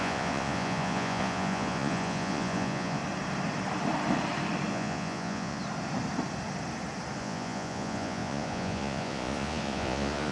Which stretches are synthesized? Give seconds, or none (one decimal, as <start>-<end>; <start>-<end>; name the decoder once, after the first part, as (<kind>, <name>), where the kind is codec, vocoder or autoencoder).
0.0-3.0 (vocoder, Vocos); 4.7-5.6; 7.2-10.3